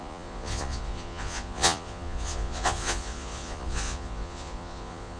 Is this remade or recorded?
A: remade